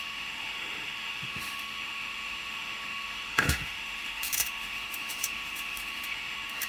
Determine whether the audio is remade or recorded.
remade